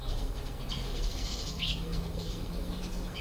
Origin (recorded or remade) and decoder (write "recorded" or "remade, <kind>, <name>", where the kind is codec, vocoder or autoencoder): remade, codec, SNAC